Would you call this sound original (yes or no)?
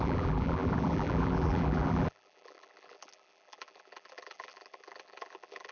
no